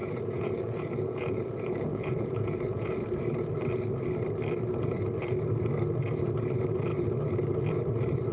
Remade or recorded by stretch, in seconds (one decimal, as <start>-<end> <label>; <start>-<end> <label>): 0.0-2.9 remade; 2.9-8.3 recorded